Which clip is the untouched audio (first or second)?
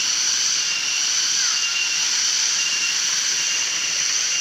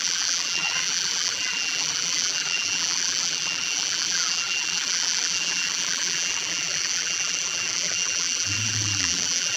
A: first